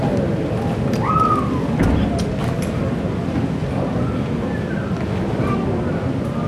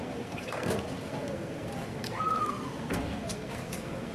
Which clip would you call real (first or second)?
first